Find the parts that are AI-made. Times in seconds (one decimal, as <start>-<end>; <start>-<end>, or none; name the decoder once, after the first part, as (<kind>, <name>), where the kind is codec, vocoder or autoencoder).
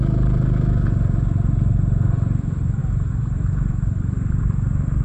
none